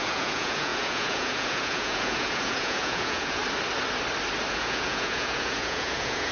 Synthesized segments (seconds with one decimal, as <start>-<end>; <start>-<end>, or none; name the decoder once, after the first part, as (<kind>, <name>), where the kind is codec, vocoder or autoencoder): 0.0-3.4 (vocoder, Vocos); 4.5-6.3